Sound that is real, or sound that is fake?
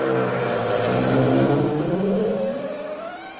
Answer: real